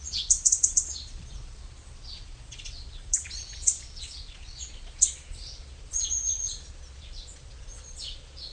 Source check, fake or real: fake